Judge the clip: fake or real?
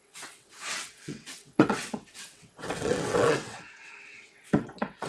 fake